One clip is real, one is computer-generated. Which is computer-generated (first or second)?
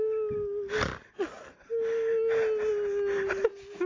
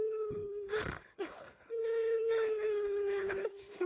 second